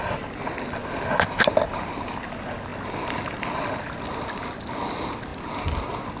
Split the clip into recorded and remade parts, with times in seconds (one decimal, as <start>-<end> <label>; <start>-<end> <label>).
0.0-5.3 recorded; 5.3-6.2 remade